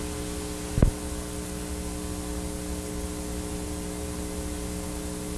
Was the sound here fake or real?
real